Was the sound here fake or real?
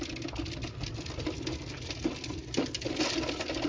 real